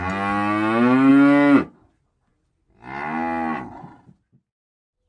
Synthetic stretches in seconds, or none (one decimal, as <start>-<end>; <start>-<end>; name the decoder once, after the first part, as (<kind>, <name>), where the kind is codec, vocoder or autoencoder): none